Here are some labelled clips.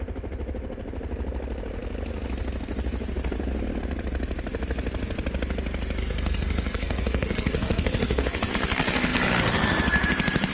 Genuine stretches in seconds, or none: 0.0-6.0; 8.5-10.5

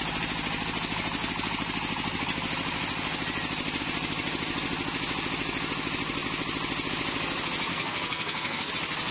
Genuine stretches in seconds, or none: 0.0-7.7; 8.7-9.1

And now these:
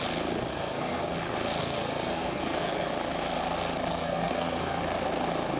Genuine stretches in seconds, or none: 0.0-0.5; 1.1-1.6; 2.9-3.9; 4.8-5.6

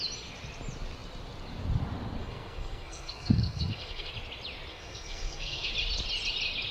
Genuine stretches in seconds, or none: 0.0-2.2; 4.1-4.7; 5.7-6.7

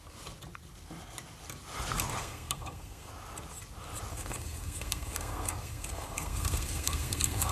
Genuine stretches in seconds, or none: 0.0-2.2; 3.1-4.1

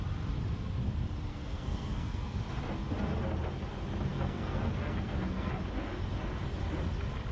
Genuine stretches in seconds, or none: 0.0-1.3; 2.4-4.1; 5.5-7.3